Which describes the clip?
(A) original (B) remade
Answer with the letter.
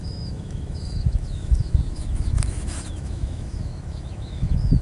B